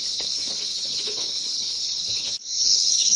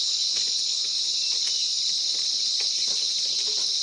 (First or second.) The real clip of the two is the second